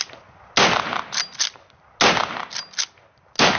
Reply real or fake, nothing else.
real